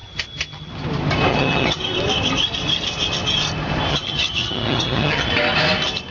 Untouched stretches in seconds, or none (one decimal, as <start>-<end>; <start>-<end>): 0.7-1.3; 1.8-3.9; 5.3-6.1